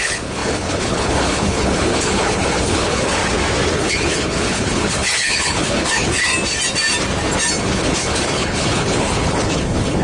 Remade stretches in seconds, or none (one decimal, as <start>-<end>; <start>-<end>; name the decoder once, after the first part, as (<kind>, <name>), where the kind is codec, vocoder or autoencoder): 0.0-3.2 (codec, HILCodec); 3.7-6.3; 7.6-10.0